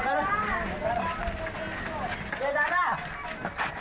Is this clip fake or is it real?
real